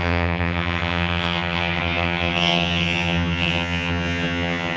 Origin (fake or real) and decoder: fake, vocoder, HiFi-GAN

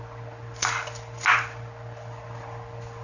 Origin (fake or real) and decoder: real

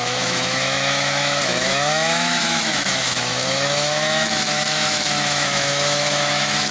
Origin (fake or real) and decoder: fake, autoencoder, DAC-VAE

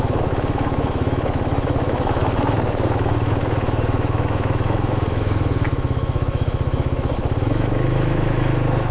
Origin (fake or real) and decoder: fake, autoencoder, DAC-VAE